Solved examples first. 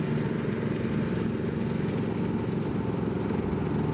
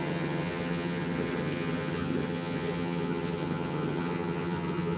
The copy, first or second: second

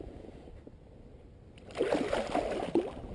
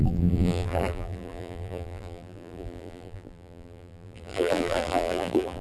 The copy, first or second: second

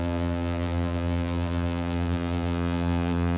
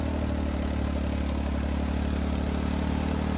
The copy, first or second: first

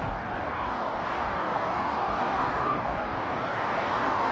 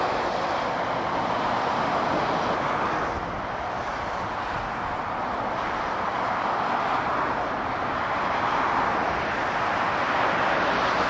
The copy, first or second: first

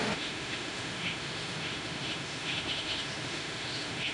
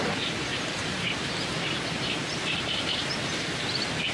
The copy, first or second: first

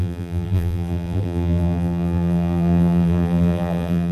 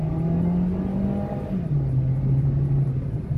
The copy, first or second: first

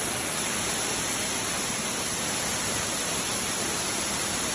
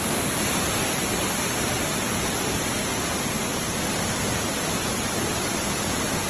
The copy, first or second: first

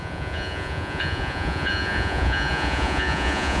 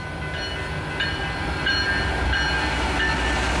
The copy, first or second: first